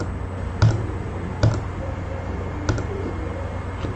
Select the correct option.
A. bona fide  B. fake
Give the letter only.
A